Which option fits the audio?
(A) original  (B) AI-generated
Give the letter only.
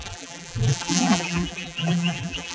B